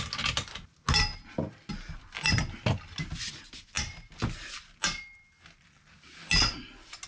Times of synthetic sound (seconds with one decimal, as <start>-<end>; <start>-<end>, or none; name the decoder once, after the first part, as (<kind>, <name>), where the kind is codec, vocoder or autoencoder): none